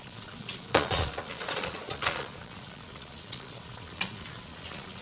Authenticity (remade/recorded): remade